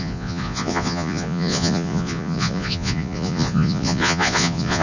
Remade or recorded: remade